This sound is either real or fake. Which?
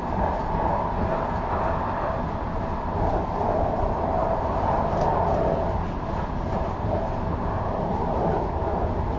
real